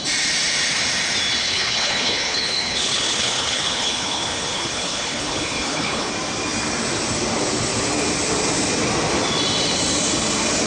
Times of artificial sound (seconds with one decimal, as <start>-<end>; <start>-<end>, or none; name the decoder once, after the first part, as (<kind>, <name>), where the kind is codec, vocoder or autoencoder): 1.4-6.1 (codec, HILCodec)